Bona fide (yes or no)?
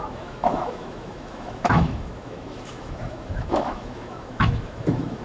no